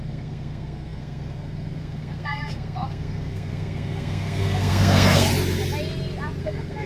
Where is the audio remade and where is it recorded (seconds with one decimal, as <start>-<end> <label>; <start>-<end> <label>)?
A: 0.0-5.3 remade; 5.3-6.4 recorded; 6.4-6.9 remade